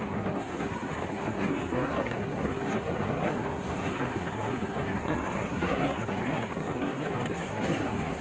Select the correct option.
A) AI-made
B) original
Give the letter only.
A